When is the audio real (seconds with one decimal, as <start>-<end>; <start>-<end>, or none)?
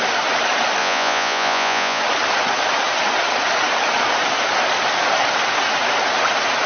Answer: 0.0-0.8; 2.0-6.7